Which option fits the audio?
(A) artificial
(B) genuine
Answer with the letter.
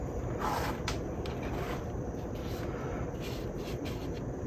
A